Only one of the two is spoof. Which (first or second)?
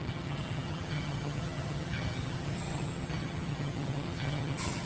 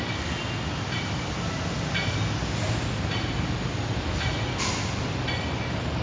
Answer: first